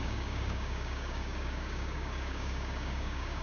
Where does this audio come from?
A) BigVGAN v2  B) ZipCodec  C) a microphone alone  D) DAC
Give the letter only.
D